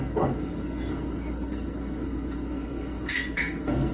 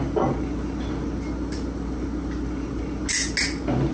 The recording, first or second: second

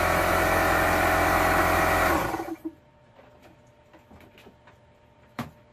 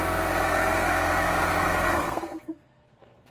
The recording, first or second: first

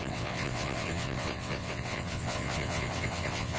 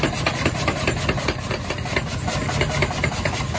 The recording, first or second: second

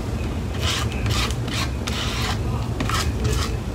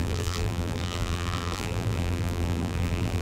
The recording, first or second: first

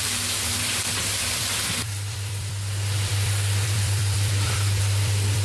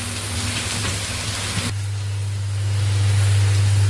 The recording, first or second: second